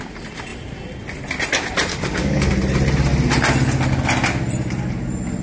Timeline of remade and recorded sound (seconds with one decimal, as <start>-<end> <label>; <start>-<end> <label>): 0.0-1.9 recorded; 1.9-2.5 remade; 2.5-5.4 recorded